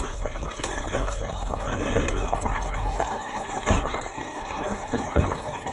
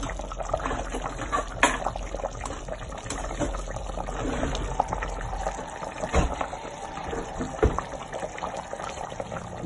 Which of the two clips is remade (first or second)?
first